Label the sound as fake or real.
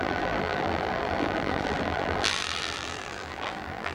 fake